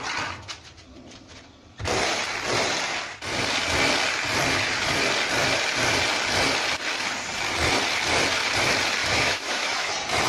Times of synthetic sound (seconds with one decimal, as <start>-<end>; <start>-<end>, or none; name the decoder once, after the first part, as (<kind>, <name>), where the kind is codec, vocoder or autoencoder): 9.0-9.9 (autoencoder, DAC-VAE)